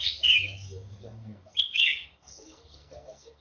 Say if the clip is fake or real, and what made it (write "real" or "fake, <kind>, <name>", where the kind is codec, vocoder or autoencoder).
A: fake, codec, SNAC